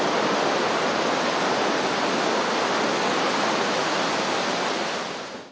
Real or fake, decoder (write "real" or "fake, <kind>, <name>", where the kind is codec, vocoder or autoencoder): real